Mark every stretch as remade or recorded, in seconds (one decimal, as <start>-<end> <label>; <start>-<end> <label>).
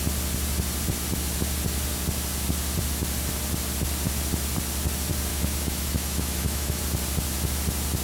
0.0-5.3 recorded; 5.3-6.8 remade; 6.8-8.0 recorded